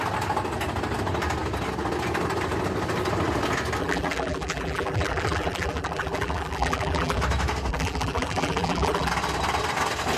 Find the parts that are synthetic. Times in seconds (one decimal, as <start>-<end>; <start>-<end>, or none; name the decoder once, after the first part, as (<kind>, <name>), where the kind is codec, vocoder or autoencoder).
3.8-7.2 (vocoder, BigVGAN v2); 7.7-9.1